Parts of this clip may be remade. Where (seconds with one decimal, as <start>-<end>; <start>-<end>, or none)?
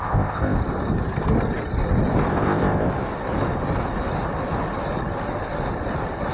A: 0.0-0.6; 2.3-2.9